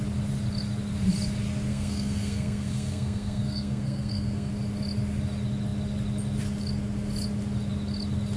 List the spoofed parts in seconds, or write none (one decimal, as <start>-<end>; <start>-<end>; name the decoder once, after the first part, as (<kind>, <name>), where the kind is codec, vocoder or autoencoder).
1.7-4.5 (codec, SNAC)